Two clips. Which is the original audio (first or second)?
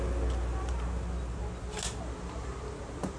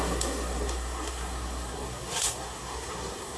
first